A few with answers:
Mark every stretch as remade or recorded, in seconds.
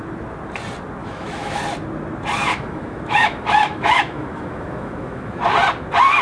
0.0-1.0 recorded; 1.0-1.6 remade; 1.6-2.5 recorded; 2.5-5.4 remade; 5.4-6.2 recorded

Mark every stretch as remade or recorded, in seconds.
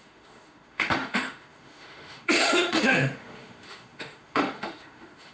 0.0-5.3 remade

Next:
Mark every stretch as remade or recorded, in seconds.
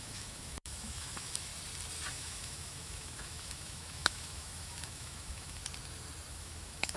0.0-1.5 remade; 1.5-2.1 recorded; 2.1-5.6 remade; 5.6-6.3 recorded; 6.3-7.0 remade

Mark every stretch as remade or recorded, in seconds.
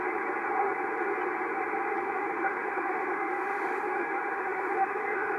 0.0-2.0 recorded; 2.0-5.4 remade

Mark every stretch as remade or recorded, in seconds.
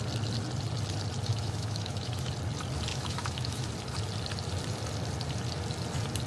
0.0-1.3 recorded; 1.3-2.3 remade; 2.3-2.9 recorded; 2.9-3.7 remade; 3.7-6.3 recorded